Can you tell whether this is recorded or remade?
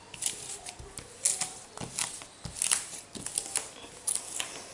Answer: recorded